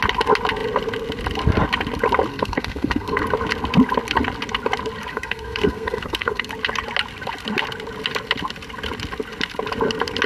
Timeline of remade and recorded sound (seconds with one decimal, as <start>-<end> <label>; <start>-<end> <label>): 0.0-2.3 recorded; 2.3-3.2 remade; 3.2-5.1 recorded; 5.1-6.5 remade; 6.5-10.3 recorded